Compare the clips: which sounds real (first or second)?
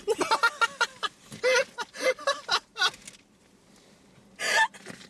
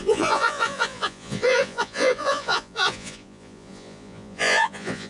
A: first